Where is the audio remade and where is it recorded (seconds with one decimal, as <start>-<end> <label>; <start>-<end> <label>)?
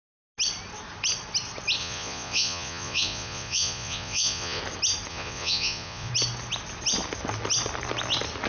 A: 0.0-1.8 recorded; 1.8-4.6 remade; 4.6-5.1 recorded; 5.1-6.1 remade; 6.1-8.5 recorded